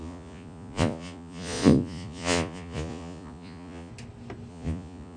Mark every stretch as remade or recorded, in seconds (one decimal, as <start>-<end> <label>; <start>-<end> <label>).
0.0-3.9 remade; 3.9-4.5 recorded; 4.5-5.2 remade